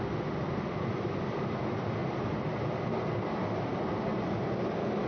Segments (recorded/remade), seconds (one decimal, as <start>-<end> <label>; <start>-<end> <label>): 0.0-2.0 recorded; 2.0-4.0 remade; 4.0-5.1 recorded